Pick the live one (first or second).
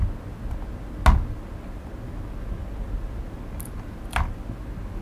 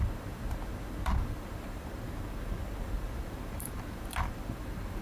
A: first